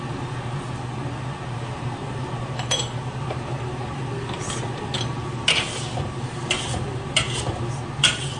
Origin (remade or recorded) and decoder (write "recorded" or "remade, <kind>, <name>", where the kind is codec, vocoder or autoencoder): recorded